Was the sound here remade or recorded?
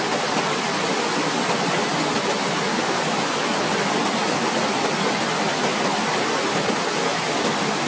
recorded